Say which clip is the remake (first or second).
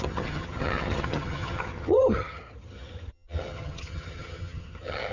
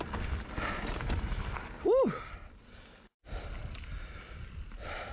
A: first